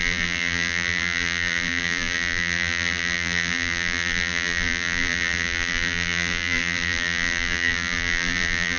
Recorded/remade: remade